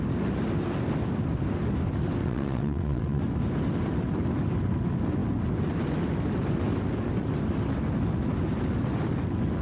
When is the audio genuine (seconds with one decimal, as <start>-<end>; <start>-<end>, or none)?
0.0-2.2; 3.2-9.6